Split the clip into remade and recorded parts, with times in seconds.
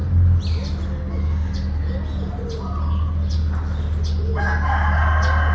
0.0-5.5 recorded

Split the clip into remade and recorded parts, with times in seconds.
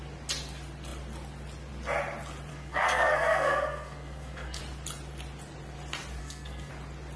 0.0-2.5 recorded; 2.5-4.6 remade; 4.6-6.2 recorded; 6.2-6.7 remade; 6.7-7.2 recorded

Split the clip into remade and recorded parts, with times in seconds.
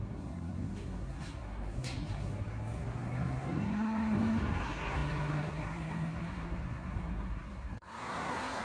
0.0-8.6 remade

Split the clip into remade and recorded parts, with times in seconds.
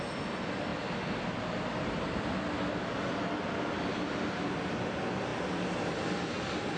0.0-6.8 recorded